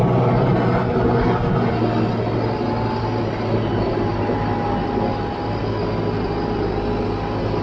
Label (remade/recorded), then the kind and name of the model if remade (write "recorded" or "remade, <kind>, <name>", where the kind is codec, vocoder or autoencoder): recorded